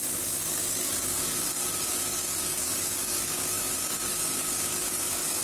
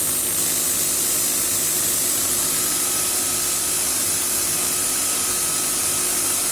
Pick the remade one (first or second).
first